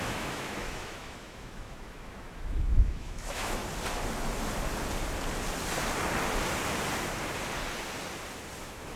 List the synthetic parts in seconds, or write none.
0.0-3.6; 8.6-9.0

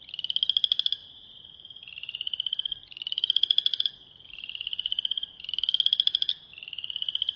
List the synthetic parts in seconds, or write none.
1.0-5.4

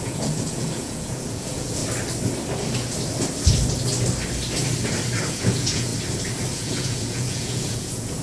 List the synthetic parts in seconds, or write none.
0.0-1.8; 5.3-5.9; 6.5-8.2

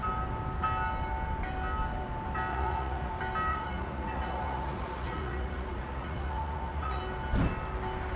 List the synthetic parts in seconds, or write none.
2.5-3.1; 3.5-7.0